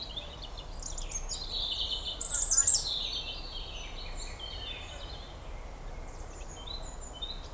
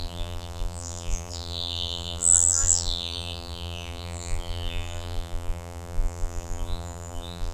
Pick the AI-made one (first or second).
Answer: second